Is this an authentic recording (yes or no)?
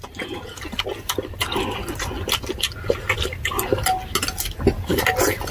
yes